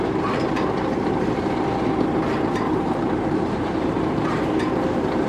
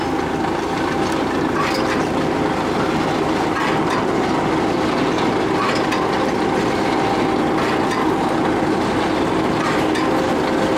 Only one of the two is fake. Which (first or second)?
first